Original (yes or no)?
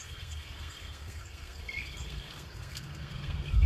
no